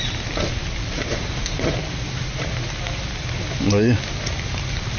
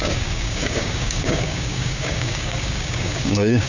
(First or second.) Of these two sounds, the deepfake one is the second